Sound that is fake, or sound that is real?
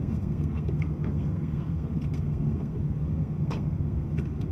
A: fake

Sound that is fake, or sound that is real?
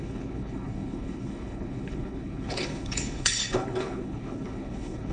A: fake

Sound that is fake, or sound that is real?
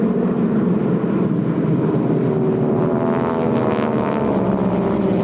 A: real